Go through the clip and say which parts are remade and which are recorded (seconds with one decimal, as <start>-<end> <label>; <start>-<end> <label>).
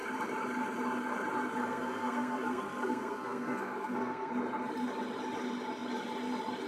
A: 0.0-1.6 recorded; 1.6-4.3 remade; 4.3-6.7 recorded